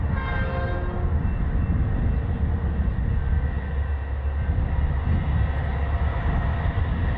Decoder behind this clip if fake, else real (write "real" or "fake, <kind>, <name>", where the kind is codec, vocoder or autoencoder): real